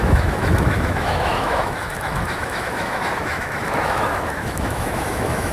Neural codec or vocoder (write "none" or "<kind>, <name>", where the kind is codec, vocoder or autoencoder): autoencoder, DAC-VAE